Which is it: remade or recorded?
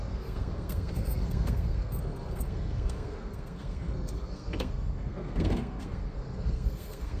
remade